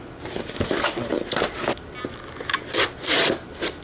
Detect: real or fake real